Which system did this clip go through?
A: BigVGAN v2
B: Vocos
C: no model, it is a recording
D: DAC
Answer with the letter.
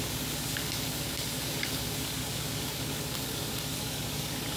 D